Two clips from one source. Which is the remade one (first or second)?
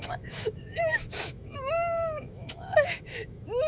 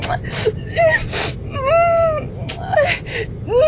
first